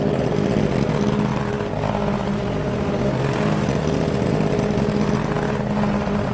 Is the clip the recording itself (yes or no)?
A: yes